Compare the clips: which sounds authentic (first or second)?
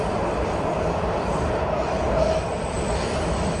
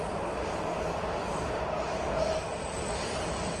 second